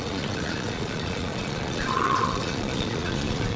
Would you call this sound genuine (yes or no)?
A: no